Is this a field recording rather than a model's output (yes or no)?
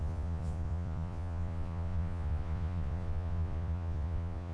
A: no